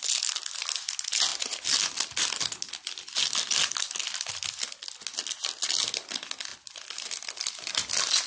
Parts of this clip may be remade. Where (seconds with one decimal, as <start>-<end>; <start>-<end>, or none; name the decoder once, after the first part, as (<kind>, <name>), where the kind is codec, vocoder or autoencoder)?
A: none